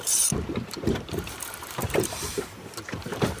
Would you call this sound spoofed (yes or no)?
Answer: yes